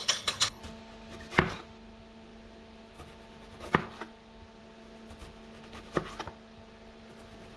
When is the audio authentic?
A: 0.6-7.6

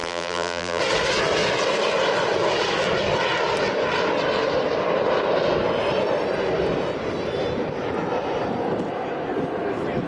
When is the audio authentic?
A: 0.8-10.1

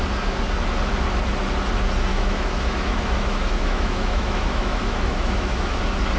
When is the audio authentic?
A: 0.0-2.1; 5.8-6.2